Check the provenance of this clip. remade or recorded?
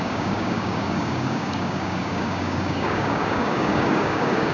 remade